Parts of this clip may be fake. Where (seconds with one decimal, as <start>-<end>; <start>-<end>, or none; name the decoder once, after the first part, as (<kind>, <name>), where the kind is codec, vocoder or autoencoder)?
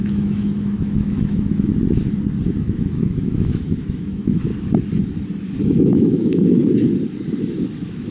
0.0-1.7 (autoencoder, DAC-VAE); 2.6-4.5; 5.6-6.6; 7.5-8.1